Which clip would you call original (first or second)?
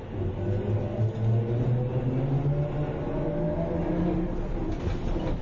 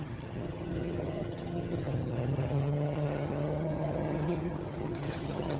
first